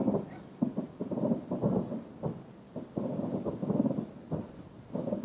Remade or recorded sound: recorded